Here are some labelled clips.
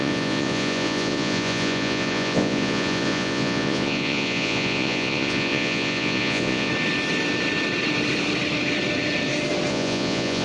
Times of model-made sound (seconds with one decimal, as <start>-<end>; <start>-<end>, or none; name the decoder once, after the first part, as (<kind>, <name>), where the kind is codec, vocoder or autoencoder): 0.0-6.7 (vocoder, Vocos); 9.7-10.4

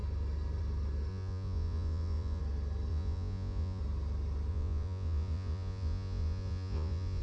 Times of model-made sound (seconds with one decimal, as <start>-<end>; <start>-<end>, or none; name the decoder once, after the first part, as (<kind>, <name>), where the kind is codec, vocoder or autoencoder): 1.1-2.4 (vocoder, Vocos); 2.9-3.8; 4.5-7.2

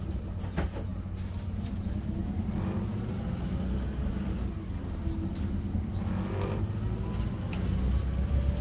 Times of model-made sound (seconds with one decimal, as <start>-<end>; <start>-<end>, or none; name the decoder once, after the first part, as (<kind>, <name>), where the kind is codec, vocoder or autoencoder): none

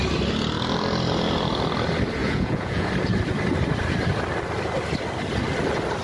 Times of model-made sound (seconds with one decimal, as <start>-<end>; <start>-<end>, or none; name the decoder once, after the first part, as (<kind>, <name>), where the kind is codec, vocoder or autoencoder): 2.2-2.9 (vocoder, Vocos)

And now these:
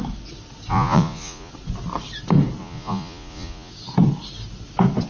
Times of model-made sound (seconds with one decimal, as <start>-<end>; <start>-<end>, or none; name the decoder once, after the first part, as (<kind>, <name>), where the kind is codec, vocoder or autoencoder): 0.7-1.5 (vocoder, Vocos); 2.6-3.7

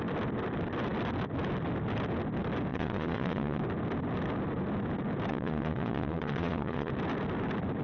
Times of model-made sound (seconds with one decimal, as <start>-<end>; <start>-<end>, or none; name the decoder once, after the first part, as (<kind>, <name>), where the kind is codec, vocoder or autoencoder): 2.7-3.6 (vocoder, Vocos); 5.3-6.9